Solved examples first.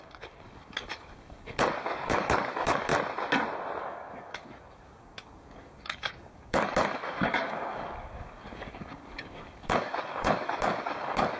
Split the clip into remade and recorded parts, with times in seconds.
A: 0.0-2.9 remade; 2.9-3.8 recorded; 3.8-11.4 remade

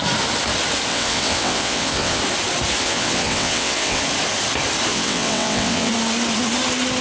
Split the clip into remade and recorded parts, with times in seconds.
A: 0.0-0.9 recorded; 0.9-2.2 remade; 2.2-2.8 recorded; 2.8-4.0 remade; 4.0-4.9 recorded; 4.9-5.9 remade; 5.9-7.0 recorded

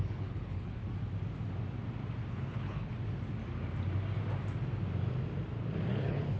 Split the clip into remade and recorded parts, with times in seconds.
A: 0.0-0.8 remade; 0.8-2.3 recorded; 2.3-2.9 remade; 2.9-5.9 recorded; 5.9-6.4 remade

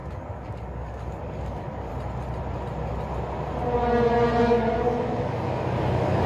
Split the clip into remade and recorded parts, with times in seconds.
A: 0.0-1.9 remade; 1.9-4.4 recorded; 4.4-6.3 remade

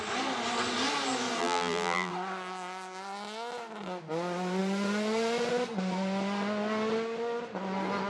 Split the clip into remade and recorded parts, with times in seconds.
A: 0.0-1.4 recorded; 1.4-2.1 remade; 2.1-8.1 recorded

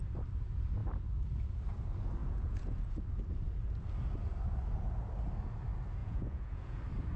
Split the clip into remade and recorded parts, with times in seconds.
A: 0.0-2.2 recorded; 2.2-3.0 remade; 3.0-6.0 recorded; 6.0-6.8 remade; 6.8-7.2 recorded

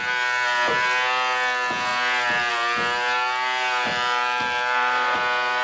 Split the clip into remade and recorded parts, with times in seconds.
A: 0.0-5.6 recorded

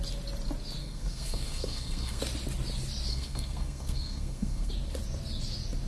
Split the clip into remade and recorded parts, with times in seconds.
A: 0.0-0.8 recorded; 0.8-2.2 remade; 2.2-3.1 recorded; 3.1-4.7 remade; 4.7-5.9 recorded